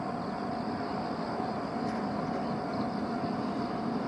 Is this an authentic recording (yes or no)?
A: yes